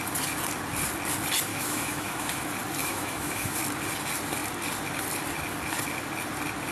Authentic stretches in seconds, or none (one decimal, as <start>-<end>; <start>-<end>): 0.0-1.5; 2.4-2.8; 3.6-6.7